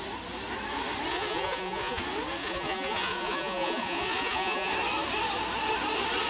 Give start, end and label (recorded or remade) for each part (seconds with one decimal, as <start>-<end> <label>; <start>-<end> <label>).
0.0-1.1 recorded; 1.1-2.0 remade; 2.0-2.4 recorded; 2.4-4.7 remade; 4.7-6.3 recorded